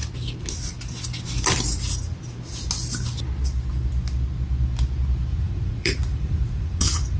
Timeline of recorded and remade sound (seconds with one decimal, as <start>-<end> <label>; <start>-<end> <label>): 0.0-5.3 recorded; 5.3-7.2 remade